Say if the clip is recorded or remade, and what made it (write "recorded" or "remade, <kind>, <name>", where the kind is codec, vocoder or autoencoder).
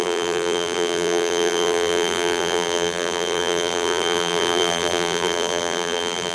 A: remade, vocoder, BigVGAN v2